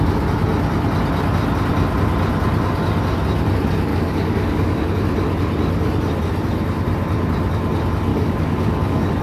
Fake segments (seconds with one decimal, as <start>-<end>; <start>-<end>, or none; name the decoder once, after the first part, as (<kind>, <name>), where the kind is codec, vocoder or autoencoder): 3.9-4.8 (codec, DAC); 8.1-9.2